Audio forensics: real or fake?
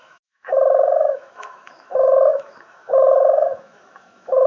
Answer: fake